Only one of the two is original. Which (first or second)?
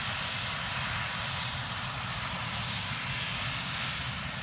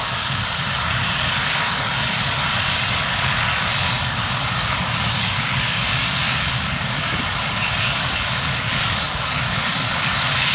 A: first